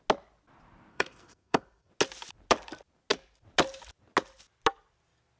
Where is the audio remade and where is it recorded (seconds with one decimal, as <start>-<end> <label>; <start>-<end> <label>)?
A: 0.0-0.9 recorded; 0.9-1.9 remade; 1.9-5.4 recorded